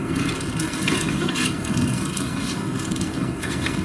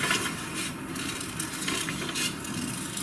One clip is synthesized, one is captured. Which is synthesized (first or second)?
first